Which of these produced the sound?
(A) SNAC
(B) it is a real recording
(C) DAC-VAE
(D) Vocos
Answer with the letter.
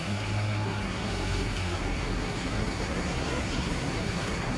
A